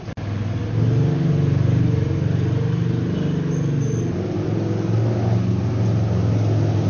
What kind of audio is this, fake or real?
real